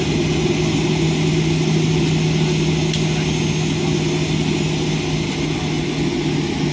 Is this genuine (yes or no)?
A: yes